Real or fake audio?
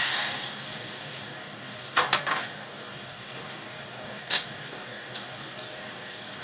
fake